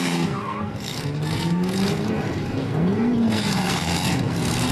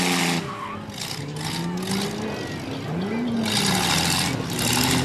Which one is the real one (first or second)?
second